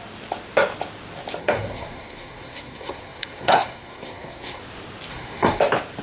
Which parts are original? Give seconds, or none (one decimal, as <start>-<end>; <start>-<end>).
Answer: 0.0-1.4; 4.6-5.1; 5.6-6.0